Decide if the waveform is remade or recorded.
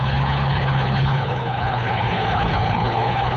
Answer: remade